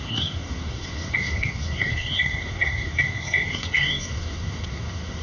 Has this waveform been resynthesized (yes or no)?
yes